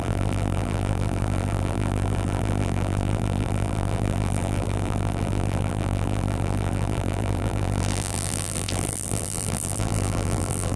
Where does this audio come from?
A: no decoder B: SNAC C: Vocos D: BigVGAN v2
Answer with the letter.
D